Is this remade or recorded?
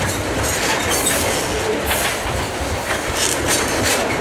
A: recorded